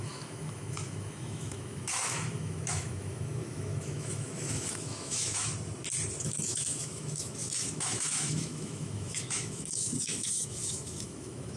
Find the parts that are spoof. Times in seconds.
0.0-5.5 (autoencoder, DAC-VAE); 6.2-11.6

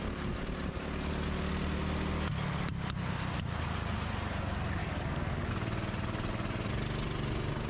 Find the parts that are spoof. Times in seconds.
4.8-5.5 (codec, DAC)

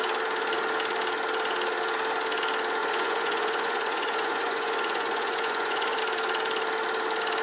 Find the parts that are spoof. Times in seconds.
2.8-6.0 (vocoder, Vocos)

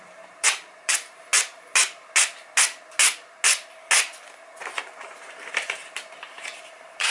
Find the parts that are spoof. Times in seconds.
0.0-1.3 (vocoder, BigVGAN v2); 4.8-7.1

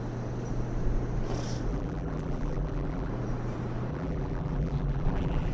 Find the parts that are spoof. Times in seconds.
1.7-3.1 (vocoder, BigVGAN v2); 3.9-5.5

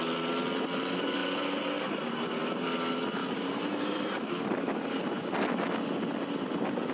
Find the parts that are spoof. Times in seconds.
3.2-4.4 (vocoder, BigVGAN v2)

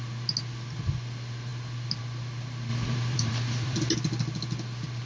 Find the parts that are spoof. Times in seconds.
2.7-3.9 (vocoder, BigVGAN v2)